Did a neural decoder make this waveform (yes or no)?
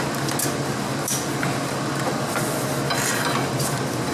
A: no